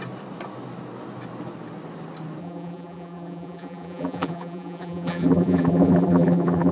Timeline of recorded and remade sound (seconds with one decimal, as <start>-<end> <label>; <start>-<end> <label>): 0.0-2.4 recorded; 2.4-6.7 remade